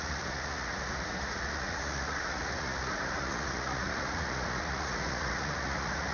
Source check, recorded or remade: remade